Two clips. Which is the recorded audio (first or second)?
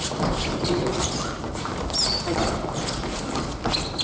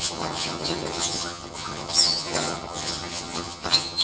first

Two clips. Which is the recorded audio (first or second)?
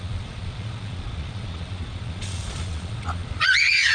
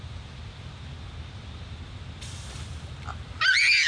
second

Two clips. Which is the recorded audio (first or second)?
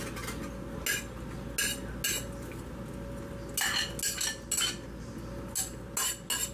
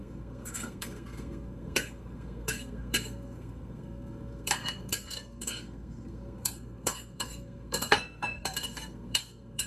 first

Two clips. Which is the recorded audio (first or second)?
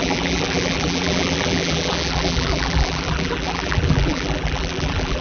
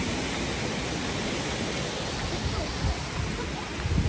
second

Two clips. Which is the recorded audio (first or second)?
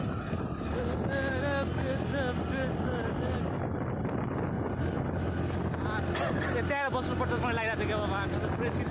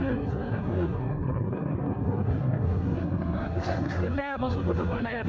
first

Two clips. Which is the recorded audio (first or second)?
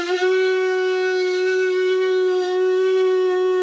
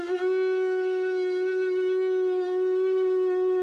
second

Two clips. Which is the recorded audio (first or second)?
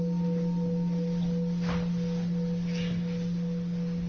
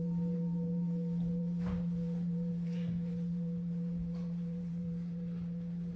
first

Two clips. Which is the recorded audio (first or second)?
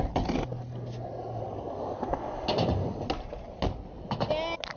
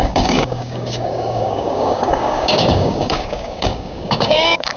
first